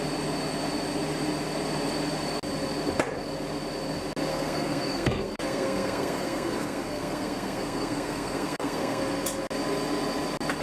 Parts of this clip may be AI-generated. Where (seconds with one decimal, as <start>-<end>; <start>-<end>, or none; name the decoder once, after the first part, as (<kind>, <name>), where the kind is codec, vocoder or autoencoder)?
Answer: 4.3-9.0 (codec, SNAC)